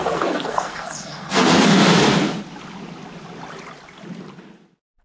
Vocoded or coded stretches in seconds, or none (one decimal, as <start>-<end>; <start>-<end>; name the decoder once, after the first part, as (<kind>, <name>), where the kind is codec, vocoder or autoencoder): 0.0-1.8 (codec, SNAC)